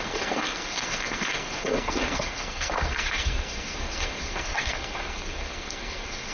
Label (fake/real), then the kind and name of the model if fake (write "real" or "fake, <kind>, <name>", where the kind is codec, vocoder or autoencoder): fake, codec, SNAC